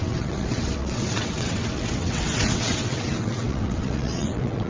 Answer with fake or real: fake